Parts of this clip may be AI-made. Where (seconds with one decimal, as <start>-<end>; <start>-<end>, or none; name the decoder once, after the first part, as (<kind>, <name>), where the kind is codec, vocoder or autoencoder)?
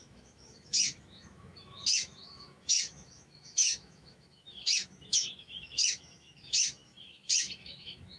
0.0-8.2 (autoencoder, DAC-VAE)